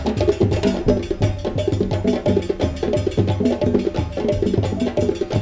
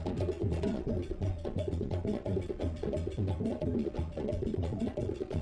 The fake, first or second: second